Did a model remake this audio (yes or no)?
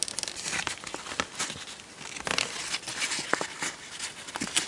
no